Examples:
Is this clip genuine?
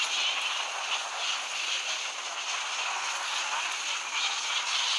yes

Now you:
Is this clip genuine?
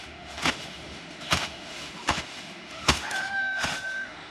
no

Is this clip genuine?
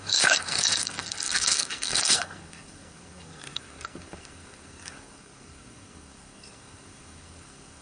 no